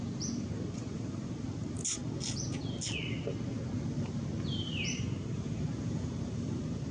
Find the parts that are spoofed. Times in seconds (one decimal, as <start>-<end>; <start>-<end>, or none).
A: 0.0-2.0; 4.5-6.9